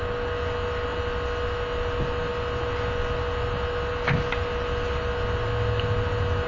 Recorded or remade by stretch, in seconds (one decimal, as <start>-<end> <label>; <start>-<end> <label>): 0.0-6.5 recorded